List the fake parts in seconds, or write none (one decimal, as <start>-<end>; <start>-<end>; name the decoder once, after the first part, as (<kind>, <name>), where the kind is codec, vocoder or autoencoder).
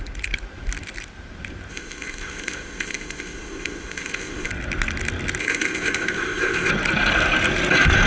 1.7-4.5 (codec, ZipCodec); 5.4-6.7